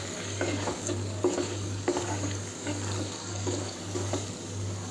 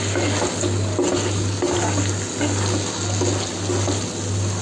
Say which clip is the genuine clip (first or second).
second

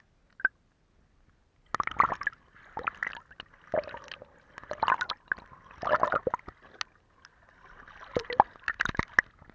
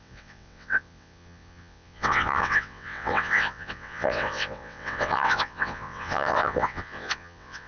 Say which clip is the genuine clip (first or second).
first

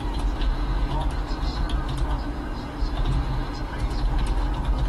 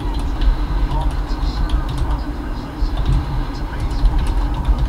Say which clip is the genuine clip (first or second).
first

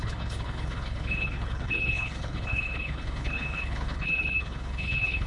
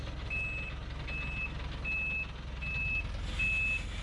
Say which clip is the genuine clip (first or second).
second